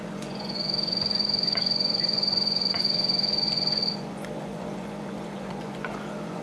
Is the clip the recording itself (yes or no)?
no